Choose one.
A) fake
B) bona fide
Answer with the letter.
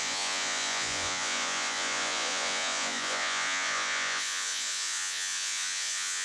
A